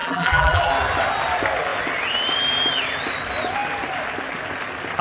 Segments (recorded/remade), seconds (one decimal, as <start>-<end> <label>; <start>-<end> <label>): 0.0-0.7 remade; 0.7-5.0 recorded